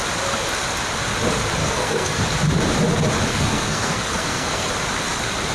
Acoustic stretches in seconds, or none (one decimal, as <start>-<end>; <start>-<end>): 0.0-1.6; 2.2-3.3; 4.7-5.5